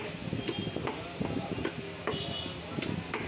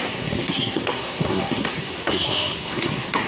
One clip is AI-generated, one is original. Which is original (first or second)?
first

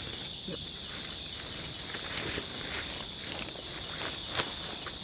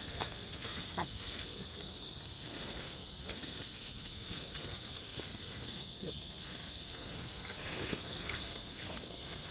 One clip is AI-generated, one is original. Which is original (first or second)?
first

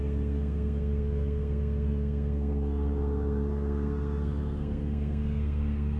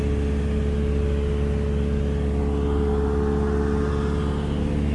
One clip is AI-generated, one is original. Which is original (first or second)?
second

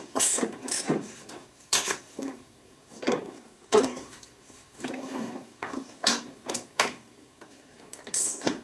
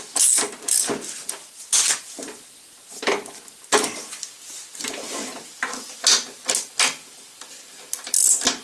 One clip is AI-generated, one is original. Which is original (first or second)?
second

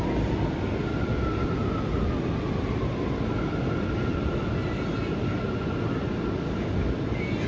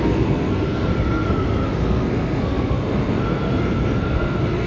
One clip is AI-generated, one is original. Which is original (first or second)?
first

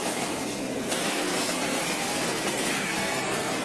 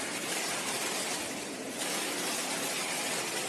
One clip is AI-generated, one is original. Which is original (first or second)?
second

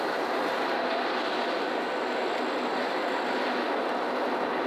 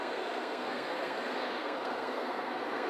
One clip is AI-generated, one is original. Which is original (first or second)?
first